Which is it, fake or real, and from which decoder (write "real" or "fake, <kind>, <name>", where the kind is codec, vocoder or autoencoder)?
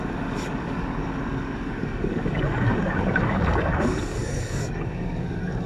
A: fake, codec, DAC